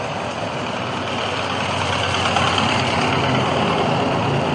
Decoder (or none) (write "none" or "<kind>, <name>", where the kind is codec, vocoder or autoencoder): none